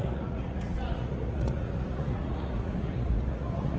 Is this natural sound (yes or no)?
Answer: no